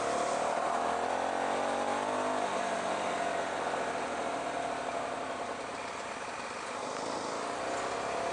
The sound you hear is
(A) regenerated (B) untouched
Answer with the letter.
B